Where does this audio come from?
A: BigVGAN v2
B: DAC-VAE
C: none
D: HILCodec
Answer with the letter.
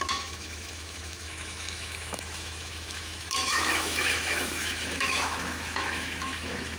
B